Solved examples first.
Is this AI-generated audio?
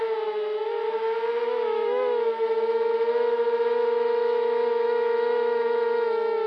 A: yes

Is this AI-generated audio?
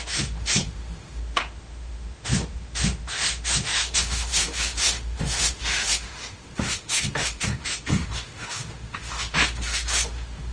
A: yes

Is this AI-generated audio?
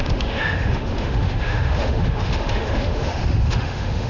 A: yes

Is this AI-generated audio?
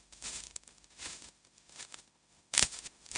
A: yes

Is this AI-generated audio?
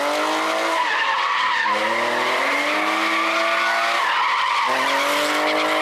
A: no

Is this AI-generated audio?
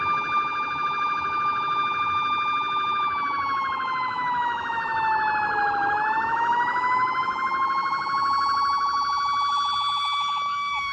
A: yes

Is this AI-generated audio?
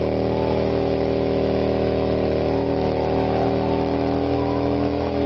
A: yes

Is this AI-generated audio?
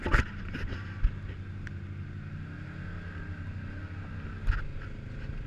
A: no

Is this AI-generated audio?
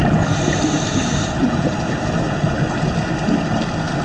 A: no